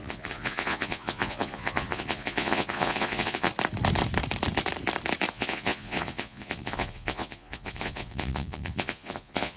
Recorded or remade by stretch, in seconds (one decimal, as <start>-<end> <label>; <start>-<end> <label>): 0.0-3.5 remade; 3.5-5.3 recorded; 5.3-9.6 remade